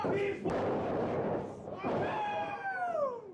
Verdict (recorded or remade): recorded